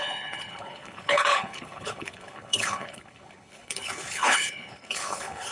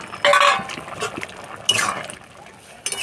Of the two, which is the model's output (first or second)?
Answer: first